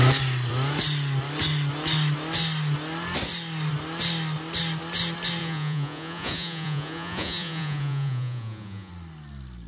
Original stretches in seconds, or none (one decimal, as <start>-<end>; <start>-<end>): 0.0-5.4; 8.9-9.7